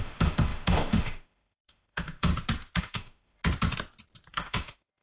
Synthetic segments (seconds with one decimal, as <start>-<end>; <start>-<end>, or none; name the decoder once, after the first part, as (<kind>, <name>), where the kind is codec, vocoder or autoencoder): 0.0-2.3 (autoencoder, DAC-VAE); 2.8-3.4; 4.3-5.0

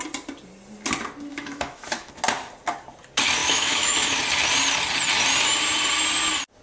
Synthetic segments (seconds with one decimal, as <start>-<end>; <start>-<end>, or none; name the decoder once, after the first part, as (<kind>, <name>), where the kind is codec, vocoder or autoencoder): 1.3-2.1 (autoencoder, DAC-VAE); 3.4-4.2